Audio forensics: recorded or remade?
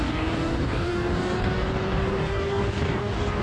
remade